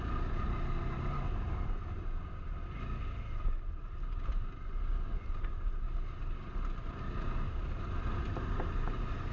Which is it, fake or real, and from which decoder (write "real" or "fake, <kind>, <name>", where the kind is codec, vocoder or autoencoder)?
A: real